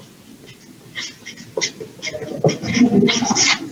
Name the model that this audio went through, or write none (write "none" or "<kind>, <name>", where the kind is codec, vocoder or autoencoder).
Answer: none